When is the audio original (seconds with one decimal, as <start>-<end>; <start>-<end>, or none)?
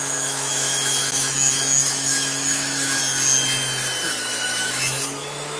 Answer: 3.0-4.2